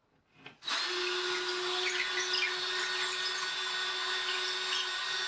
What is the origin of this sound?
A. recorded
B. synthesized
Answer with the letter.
A